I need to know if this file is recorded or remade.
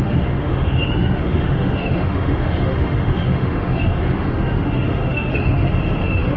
remade